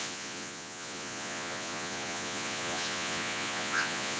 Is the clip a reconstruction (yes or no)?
yes